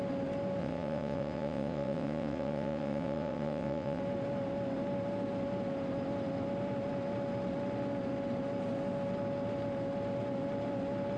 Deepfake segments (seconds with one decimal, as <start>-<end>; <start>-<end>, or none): 0.6-4.0